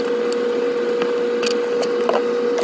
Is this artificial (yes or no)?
no